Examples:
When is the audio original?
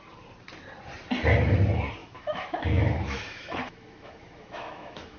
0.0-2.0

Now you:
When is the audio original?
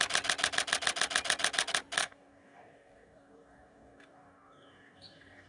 0.0-2.0